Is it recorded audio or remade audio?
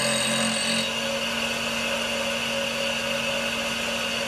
recorded